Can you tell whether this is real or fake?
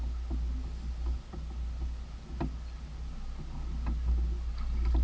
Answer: real